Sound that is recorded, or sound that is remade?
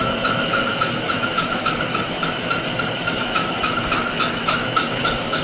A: remade